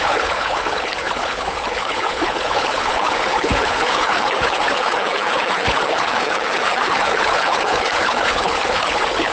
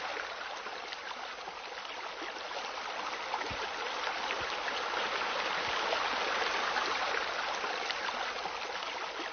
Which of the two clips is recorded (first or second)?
second